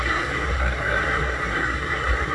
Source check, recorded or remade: remade